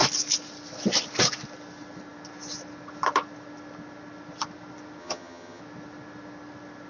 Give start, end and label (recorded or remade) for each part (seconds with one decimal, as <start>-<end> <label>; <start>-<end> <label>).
0.0-5.0 recorded; 5.0-5.6 remade; 5.6-6.9 recorded